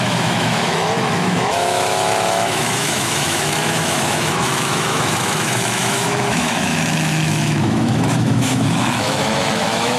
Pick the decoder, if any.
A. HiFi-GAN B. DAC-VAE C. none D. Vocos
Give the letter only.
B